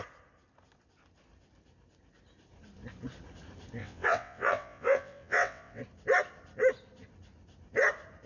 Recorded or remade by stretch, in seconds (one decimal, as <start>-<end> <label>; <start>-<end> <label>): 0.0-3.8 recorded; 3.8-5.8 remade; 5.8-8.3 recorded